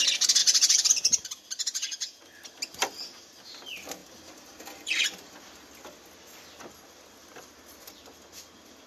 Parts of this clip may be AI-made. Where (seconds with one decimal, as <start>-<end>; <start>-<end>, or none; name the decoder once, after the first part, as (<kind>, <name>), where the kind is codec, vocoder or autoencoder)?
0.4-0.9 (vocoder, Vocos); 1.6-2.2

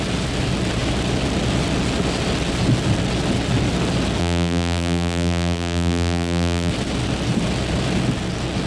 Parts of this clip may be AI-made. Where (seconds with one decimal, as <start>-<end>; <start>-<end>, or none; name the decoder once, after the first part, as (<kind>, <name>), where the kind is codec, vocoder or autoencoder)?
4.2-6.7 (vocoder, BigVGAN v2)

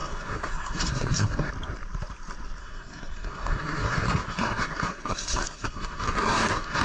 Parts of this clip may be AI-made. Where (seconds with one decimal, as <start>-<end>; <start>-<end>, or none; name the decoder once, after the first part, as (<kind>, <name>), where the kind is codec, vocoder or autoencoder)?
0.0-1.5 (codec, SNAC); 2.6-6.8

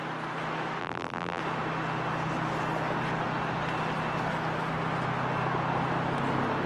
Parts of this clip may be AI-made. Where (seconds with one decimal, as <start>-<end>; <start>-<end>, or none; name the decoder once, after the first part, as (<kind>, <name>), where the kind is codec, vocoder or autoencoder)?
0.8-1.4 (vocoder, BigVGAN v2)

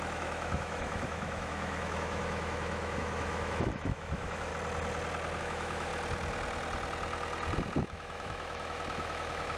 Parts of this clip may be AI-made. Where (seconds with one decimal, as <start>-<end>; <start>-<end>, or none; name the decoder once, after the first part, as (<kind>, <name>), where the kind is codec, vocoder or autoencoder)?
0.0-4.5 (autoencoder, DAC-VAE); 5.4-5.9; 7.8-9.6